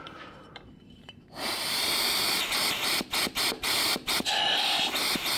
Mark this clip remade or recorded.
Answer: remade